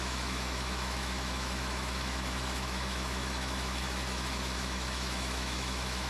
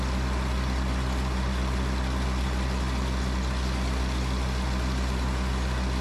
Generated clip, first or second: first